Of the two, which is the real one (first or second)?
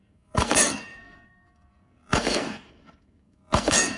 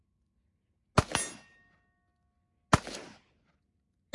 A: second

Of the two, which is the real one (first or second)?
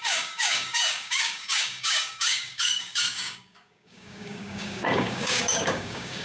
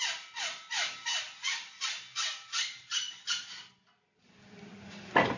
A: second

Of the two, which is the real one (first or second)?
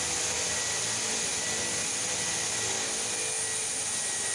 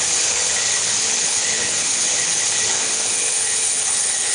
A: first